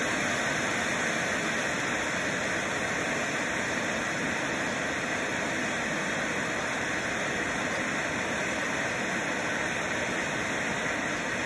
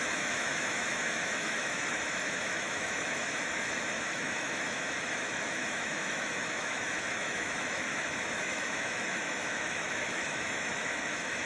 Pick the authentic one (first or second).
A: first